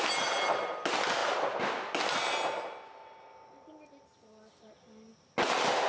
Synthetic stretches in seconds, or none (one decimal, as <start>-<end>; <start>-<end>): none